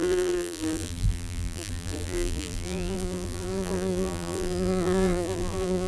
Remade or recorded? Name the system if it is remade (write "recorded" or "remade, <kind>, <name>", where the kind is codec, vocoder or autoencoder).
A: remade, vocoder, BigVGAN v2